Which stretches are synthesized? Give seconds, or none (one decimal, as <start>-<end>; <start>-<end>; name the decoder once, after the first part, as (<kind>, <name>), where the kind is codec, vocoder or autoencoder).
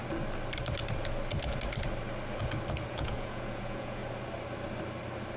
2.9-4.0 (vocoder, Vocos)